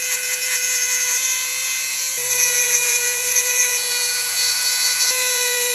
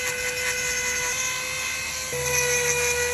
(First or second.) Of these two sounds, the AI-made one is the first